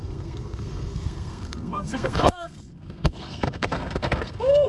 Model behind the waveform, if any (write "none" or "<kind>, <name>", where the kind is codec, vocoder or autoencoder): codec, SNAC